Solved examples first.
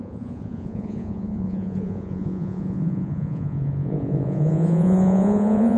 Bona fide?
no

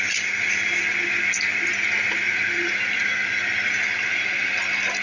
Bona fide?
yes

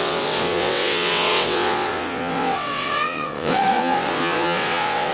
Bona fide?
no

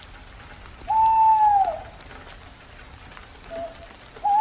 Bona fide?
yes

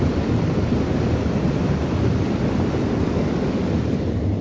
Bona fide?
yes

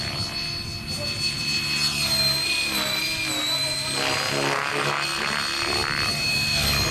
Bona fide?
yes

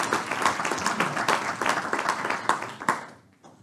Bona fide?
yes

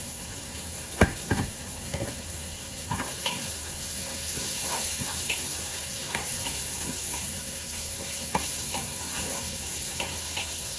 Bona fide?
no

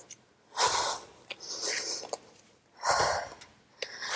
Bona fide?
yes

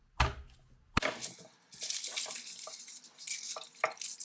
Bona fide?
yes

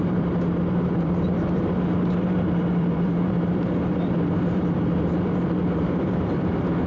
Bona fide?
no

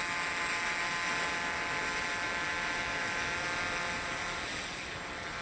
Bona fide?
yes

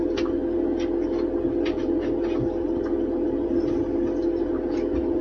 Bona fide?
yes